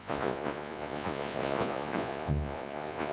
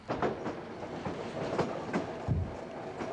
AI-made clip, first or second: first